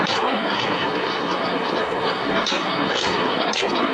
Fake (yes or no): yes